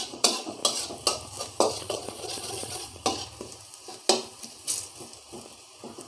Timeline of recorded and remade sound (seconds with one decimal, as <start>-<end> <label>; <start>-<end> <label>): 0.0-0.6 remade; 0.6-1.7 recorded; 1.7-3.0 remade; 3.0-6.1 recorded